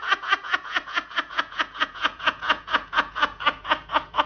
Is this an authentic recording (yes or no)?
no